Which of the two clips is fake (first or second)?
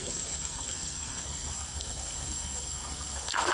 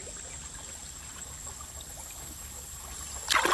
first